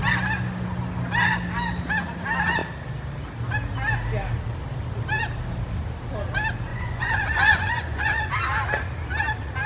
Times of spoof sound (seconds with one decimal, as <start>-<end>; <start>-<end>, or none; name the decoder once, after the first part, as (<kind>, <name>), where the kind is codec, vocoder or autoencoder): 6.7-8.3 (vocoder, Vocos)